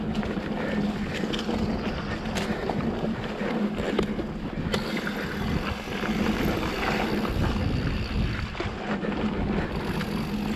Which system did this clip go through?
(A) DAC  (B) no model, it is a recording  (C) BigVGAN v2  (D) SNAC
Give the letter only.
B